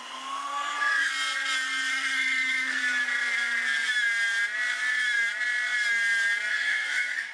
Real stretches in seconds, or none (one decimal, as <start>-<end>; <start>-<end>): 1.1-1.9; 2.8-6.5